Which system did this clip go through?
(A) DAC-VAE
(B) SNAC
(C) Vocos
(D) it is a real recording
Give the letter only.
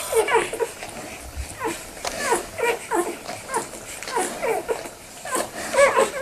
D